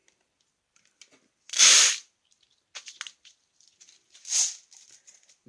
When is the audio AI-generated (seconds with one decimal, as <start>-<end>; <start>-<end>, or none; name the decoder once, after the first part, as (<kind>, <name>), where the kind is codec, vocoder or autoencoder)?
none